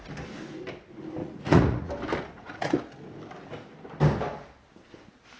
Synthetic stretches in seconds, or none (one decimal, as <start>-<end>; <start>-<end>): 1.2-1.9; 2.3-2.8